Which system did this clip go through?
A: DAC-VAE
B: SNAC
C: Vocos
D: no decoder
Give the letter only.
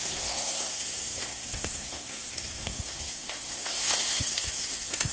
B